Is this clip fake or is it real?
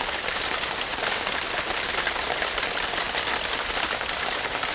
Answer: real